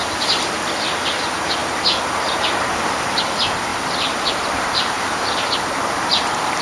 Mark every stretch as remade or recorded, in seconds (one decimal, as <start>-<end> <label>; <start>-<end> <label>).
0.0-0.5 remade; 0.5-3.7 recorded; 3.7-5.6 remade; 5.6-6.6 recorded